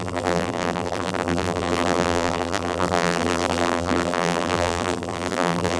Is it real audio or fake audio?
fake